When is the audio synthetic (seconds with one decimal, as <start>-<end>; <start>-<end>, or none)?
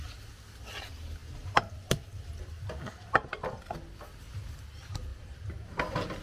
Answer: none